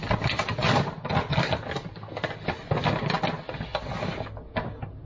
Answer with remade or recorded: recorded